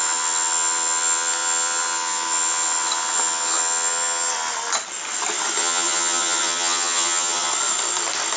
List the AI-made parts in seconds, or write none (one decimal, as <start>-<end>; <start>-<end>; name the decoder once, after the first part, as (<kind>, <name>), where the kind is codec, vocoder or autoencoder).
5.6-7.5 (vocoder, HiFi-GAN)